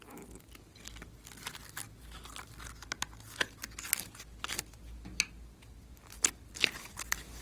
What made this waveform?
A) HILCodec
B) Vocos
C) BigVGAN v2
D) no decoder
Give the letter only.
D